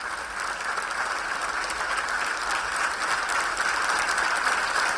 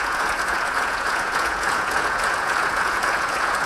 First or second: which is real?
first